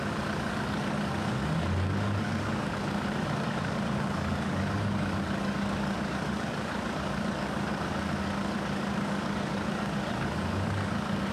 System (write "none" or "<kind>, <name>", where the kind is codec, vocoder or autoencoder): codec, DAC